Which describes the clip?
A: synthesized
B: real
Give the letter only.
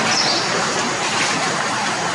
A